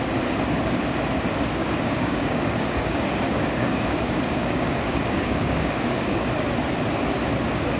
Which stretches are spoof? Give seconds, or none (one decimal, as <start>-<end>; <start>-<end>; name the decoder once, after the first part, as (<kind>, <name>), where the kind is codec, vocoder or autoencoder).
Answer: 1.6-6.3 (codec, DAC)